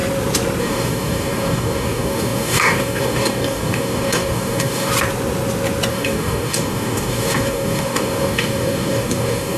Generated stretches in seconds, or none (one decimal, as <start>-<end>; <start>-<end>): 0.6-4.9; 5.9-9.6